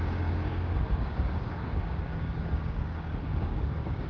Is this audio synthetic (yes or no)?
yes